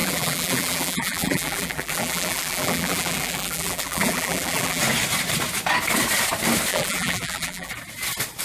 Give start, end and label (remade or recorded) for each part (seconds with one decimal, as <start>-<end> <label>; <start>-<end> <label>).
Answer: 0.0-4.8 remade; 4.8-6.7 recorded; 6.7-7.7 remade; 7.7-8.4 recorded